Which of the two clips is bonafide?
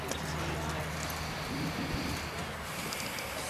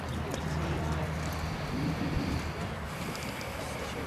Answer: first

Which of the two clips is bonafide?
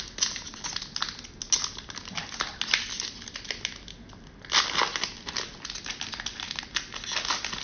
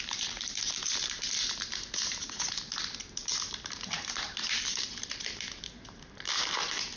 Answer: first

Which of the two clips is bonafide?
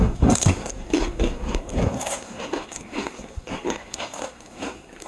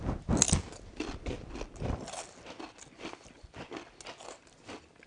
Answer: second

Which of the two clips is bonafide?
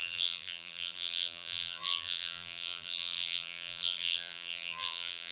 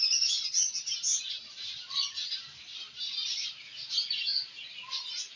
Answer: second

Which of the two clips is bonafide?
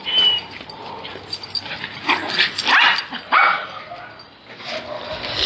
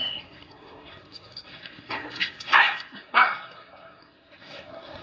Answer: first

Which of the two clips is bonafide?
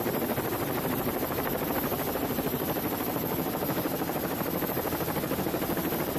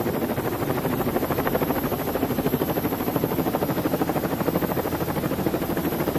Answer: second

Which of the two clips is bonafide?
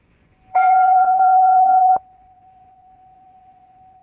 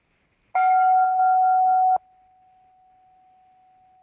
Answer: second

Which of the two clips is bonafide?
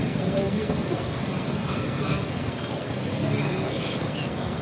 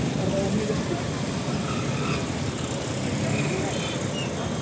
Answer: second